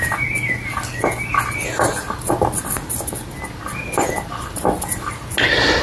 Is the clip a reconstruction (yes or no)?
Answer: no